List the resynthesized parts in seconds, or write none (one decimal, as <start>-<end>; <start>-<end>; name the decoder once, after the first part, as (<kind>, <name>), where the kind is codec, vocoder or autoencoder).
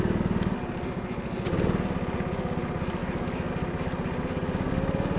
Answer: 3.0-3.5 (autoencoder, DAC-VAE)